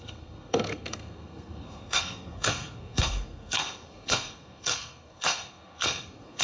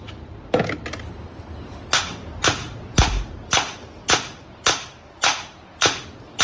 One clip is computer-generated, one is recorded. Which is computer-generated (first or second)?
first